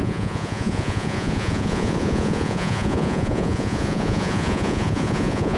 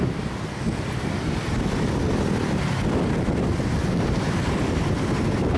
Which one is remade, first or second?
first